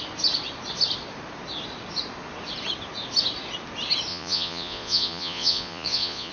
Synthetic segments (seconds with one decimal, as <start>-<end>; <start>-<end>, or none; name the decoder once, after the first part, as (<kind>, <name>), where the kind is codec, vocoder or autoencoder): 4.1-6.3 (vocoder, Vocos)